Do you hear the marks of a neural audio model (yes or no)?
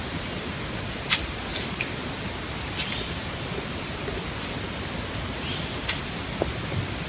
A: no